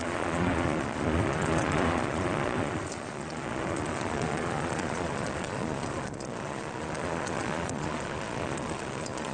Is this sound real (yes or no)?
no